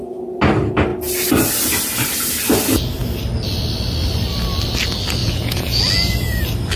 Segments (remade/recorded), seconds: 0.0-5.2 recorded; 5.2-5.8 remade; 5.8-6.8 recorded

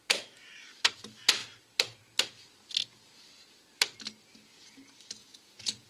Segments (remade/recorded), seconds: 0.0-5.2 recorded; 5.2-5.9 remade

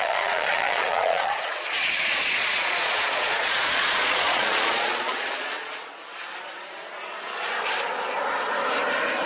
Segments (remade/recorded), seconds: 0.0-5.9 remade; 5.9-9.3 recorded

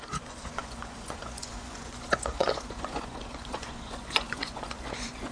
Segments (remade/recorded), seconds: 0.0-5.3 remade